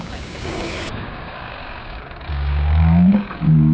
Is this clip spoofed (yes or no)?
yes